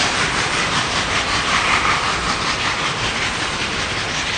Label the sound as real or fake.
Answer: fake